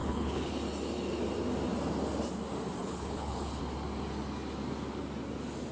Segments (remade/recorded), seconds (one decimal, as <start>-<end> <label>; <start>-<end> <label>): 0.0-0.5 remade; 0.5-2.8 recorded; 2.8-3.6 remade; 3.6-5.7 recorded